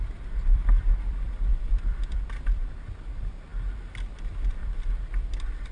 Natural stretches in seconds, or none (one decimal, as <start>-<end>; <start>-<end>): 3.5-4.5